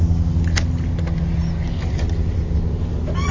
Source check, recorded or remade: recorded